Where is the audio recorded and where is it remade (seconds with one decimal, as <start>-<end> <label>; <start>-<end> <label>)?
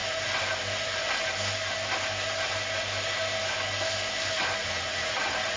0.0-4.6 recorded; 4.6-5.6 remade